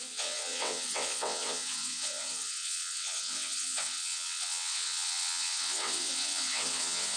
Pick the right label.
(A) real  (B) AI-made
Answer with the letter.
B